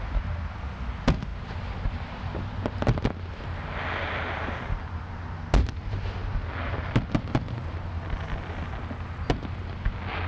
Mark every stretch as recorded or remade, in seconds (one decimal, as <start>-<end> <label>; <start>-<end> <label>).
0.0-10.3 recorded